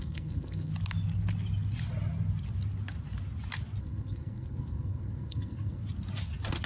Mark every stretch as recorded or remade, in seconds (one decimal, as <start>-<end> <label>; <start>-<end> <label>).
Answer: 0.0-0.7 remade; 0.7-3.8 recorded; 3.8-5.8 remade; 5.8-6.7 recorded